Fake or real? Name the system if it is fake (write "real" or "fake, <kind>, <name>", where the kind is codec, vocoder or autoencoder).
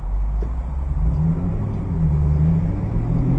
real